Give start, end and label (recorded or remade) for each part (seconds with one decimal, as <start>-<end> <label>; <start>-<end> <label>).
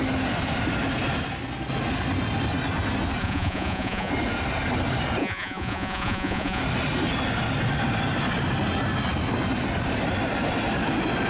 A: 0.0-3.2 recorded; 3.2-4.1 remade; 4.1-5.2 recorded; 5.2-6.6 remade; 6.6-11.3 recorded